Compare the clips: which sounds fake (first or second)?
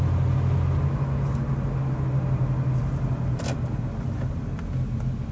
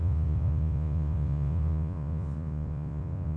second